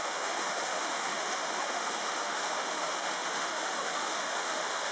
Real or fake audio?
fake